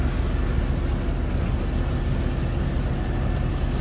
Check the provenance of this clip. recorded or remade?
recorded